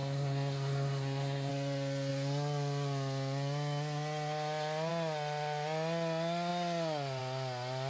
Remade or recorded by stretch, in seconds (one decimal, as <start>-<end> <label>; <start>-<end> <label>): 0.0-1.5 remade; 1.5-7.9 recorded